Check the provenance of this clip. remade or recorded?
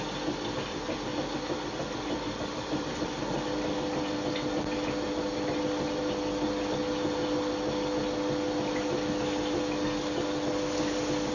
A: recorded